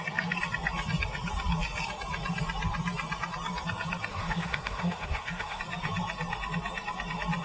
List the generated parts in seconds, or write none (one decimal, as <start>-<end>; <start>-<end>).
4.1-5.6